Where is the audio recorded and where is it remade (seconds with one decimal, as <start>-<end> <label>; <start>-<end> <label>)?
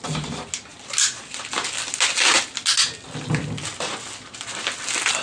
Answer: 0.0-5.2 recorded